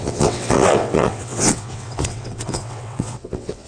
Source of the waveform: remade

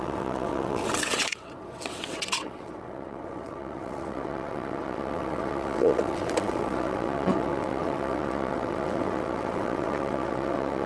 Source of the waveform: remade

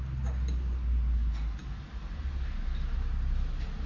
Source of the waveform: recorded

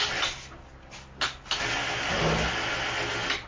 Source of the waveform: recorded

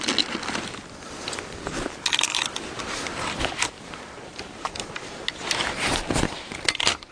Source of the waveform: recorded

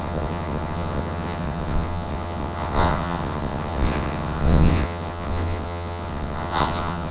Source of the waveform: remade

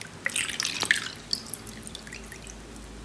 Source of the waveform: recorded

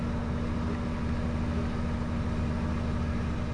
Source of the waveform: recorded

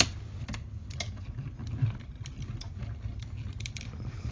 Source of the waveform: recorded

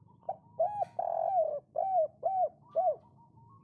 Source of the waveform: recorded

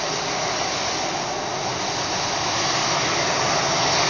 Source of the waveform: recorded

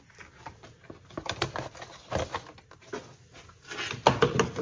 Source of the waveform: recorded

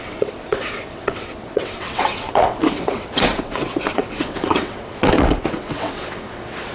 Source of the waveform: remade